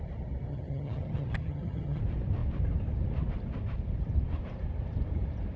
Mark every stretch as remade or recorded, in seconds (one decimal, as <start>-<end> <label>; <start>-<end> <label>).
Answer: 0.0-0.5 recorded; 0.5-2.0 remade; 2.0-5.6 recorded